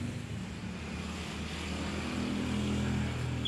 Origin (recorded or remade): recorded